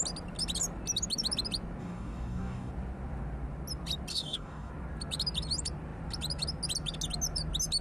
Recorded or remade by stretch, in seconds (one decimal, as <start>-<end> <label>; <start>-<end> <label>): 0.0-1.8 recorded; 1.8-2.7 remade; 2.7-4.1 recorded; 4.1-4.7 remade; 4.7-7.8 recorded